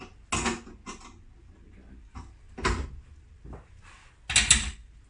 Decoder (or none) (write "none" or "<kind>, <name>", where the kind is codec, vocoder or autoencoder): none